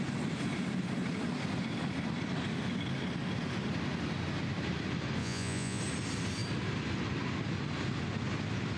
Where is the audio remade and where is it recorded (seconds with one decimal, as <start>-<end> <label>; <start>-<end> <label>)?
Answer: 0.0-5.2 recorded; 5.2-5.8 remade; 5.8-8.8 recorded